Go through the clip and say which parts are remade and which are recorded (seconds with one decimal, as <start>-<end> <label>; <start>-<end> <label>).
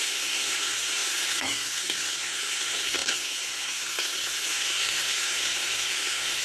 0.0-6.4 remade